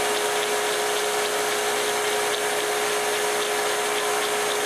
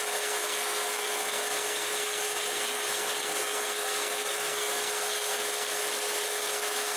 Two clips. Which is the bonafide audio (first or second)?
first